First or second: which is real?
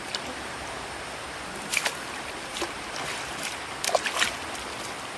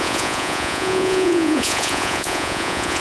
first